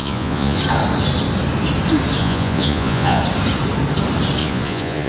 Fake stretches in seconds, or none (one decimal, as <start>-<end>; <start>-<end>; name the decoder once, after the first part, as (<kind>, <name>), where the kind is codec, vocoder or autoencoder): 0.0-0.6 (vocoder, Vocos); 2.2-3.2; 4.4-5.1